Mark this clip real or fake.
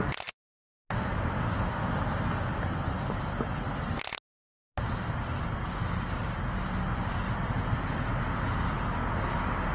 real